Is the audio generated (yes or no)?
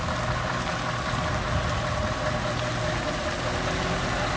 no